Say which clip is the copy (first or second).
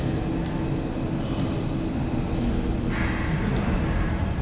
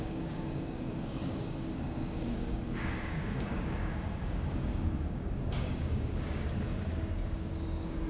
second